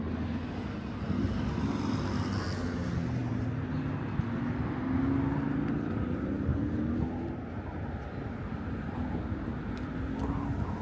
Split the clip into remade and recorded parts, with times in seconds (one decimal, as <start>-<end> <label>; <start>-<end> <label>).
0.0-10.8 recorded